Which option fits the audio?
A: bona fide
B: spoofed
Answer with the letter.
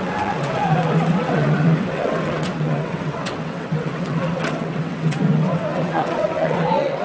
B